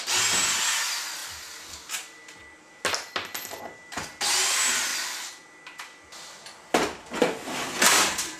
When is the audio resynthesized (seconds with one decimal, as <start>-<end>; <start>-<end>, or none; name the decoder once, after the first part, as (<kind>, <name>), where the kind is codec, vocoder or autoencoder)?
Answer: none